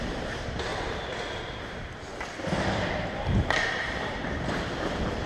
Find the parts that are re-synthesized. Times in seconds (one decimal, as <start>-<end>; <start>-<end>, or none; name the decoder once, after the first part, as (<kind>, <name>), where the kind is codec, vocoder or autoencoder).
0.0-0.7 (vocoder, BigVGAN v2); 1.6-5.3